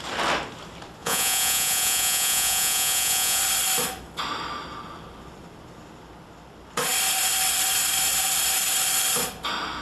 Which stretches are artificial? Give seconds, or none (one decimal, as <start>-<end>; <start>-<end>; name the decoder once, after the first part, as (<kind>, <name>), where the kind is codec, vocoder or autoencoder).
1.0-3.4 (vocoder, Vocos)